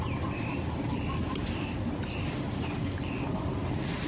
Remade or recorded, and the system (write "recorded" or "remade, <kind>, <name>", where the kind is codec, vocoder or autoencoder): recorded